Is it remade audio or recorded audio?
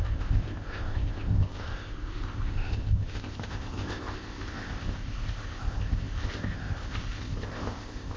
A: remade